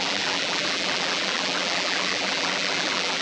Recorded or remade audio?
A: remade